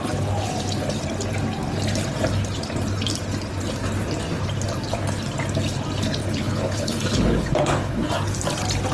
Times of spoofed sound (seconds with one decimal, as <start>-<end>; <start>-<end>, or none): 6.2-8.1